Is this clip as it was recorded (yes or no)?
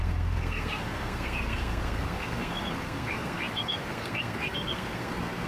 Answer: no